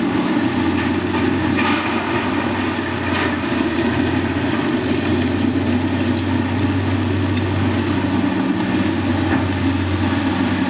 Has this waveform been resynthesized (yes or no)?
no